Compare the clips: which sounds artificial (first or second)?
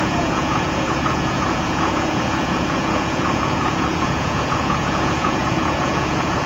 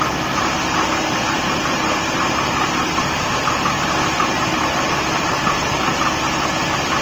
first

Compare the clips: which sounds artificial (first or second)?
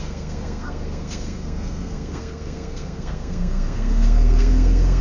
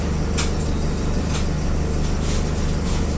first